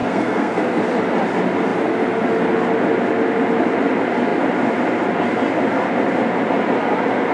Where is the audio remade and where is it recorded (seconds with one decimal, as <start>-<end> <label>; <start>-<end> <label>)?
0.0-0.8 remade; 0.8-7.3 recorded

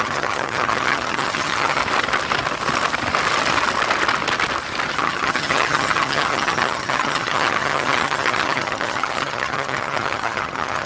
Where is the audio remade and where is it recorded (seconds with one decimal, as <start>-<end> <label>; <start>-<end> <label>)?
0.0-1.8 remade; 1.8-4.9 recorded; 4.9-10.9 remade

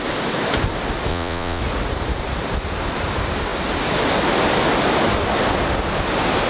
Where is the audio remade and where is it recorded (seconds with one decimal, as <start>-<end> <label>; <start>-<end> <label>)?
0.0-1.1 recorded; 1.1-1.6 remade; 1.6-6.5 recorded

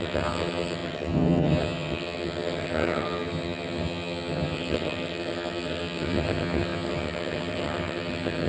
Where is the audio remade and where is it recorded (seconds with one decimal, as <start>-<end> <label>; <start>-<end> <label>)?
0.0-8.5 remade

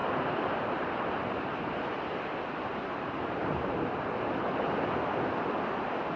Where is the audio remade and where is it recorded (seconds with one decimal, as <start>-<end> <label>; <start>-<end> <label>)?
0.0-1.7 remade; 1.7-2.7 recorded; 2.7-4.0 remade; 4.0-6.2 recorded

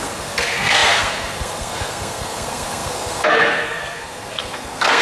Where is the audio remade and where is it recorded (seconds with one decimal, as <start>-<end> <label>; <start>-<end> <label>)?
0.0-5.0 remade